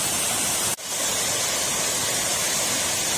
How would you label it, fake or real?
real